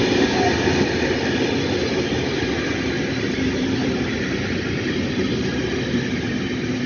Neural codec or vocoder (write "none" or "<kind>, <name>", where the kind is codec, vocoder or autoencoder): none